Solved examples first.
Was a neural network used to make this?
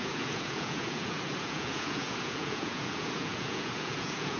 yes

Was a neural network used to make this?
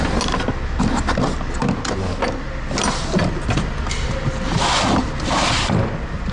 no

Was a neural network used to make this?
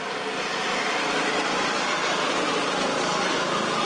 no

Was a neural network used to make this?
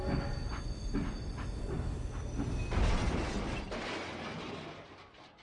no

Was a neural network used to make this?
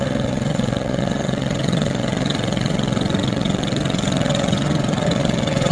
yes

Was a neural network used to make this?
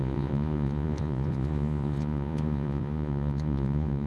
yes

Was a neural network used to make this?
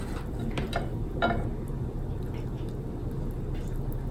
no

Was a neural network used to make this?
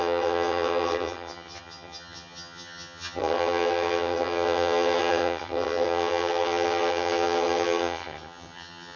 yes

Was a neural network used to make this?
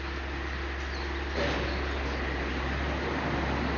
no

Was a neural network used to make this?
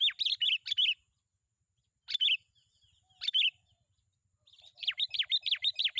no